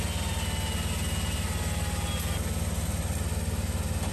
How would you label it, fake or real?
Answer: real